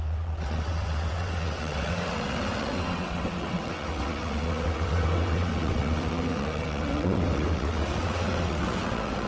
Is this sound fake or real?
fake